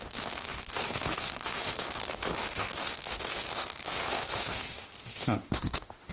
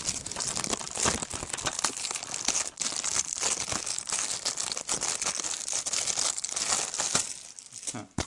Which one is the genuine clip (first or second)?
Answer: second